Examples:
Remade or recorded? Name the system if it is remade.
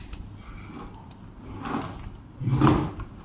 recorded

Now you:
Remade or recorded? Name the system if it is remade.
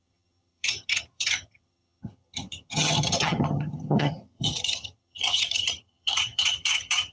remade, vocoder, HiFi-GAN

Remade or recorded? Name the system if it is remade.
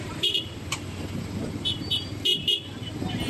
remade, vocoder, BigVGAN v2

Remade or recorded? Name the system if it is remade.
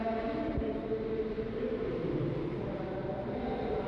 recorded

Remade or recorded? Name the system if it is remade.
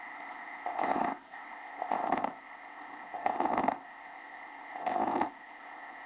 remade, codec, ZipCodec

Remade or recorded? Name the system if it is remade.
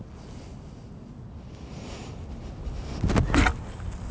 recorded